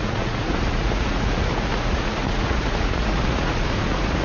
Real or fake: fake